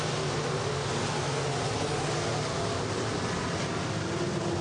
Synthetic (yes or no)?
no